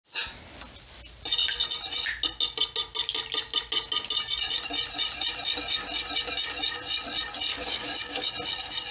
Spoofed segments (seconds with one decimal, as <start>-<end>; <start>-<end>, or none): 7.5-8.3